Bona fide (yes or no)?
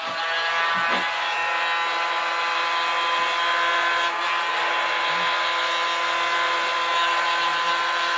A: yes